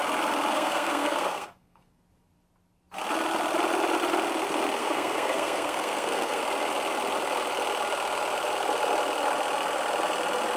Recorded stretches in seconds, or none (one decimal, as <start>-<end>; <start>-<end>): 0.0-0.5; 2.0-4.8; 6.4-10.6